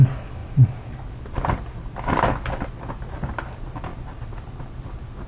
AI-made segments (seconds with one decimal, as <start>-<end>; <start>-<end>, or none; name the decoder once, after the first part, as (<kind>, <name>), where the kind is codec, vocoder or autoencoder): 0.4-1.1 (vocoder, BigVGAN v2); 3.9-4.6